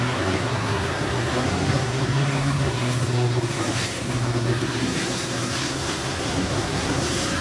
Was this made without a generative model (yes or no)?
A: no